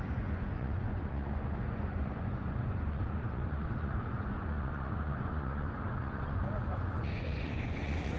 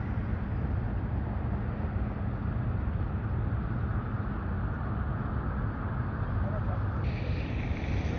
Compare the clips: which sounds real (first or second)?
second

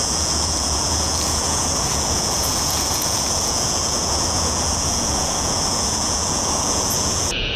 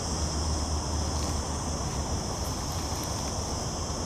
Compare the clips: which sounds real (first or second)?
second